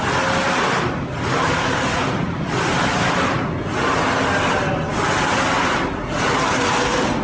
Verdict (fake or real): real